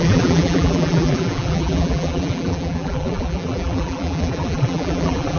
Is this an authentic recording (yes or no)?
no